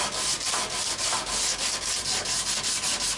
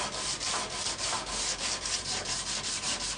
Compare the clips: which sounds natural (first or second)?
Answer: first